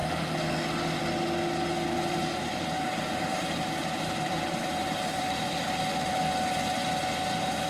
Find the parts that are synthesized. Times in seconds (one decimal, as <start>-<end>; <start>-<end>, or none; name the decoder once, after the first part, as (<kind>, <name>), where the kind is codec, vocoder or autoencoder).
0.0-0.5 (vocoder, BigVGAN v2); 2.2-6.1